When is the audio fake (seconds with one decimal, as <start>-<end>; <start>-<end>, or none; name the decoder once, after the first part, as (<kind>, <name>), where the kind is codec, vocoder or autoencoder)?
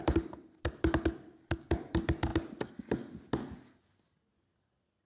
none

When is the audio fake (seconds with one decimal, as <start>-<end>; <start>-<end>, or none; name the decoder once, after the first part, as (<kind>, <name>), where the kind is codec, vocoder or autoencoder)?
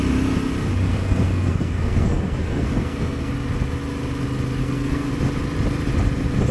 0.9-3.3 (codec, SNAC); 4.6-5.1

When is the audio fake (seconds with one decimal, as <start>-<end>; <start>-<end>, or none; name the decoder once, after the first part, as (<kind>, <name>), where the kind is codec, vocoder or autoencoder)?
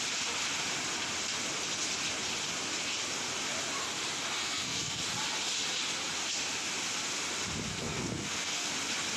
4.4-5.0 (codec, SNAC); 7.7-8.7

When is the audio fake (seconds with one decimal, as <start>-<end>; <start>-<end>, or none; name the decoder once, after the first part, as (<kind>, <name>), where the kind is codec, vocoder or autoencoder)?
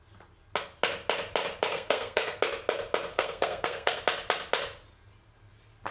1.7-2.4 (codec, SNAC); 3.1-4.0